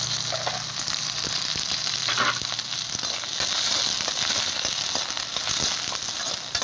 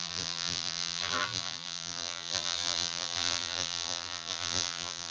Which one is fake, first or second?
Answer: second